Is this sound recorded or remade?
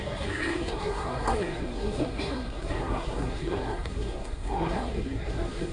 remade